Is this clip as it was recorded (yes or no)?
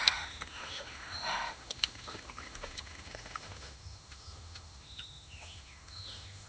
no